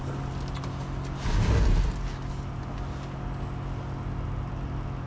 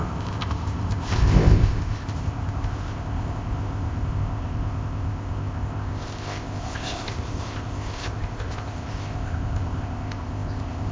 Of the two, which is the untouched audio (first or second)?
first